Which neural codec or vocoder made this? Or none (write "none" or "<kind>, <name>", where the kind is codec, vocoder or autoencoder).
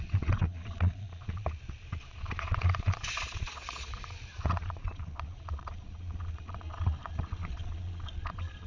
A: vocoder, Vocos